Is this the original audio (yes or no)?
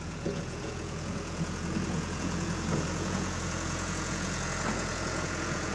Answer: no